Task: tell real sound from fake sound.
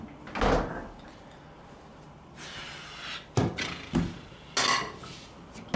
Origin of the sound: real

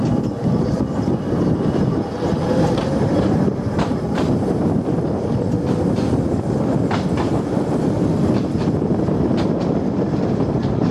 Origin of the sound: real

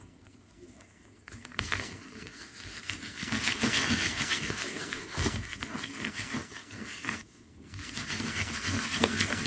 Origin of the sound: fake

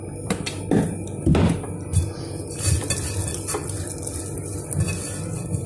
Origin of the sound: real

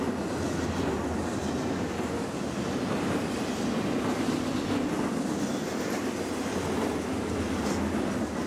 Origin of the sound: real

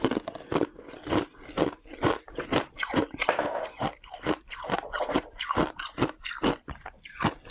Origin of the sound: real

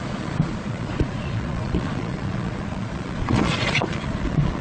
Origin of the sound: fake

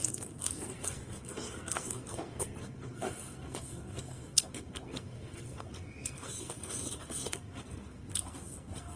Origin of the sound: fake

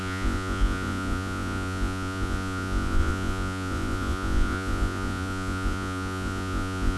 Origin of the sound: fake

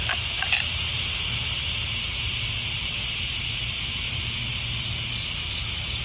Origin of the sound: real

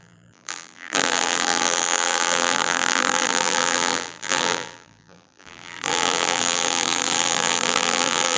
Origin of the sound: fake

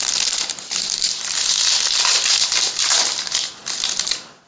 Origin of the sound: real